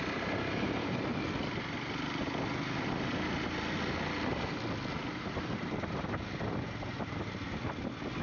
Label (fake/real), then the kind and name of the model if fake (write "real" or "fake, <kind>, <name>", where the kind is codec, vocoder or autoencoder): real